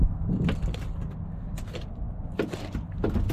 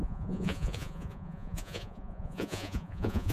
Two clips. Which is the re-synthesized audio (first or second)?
second